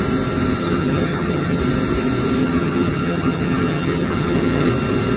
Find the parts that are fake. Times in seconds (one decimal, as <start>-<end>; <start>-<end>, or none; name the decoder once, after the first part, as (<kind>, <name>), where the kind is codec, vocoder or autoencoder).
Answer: 0.6-1.6 (vocoder, HiFi-GAN); 2.4-4.7